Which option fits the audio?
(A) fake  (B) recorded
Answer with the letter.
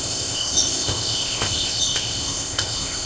A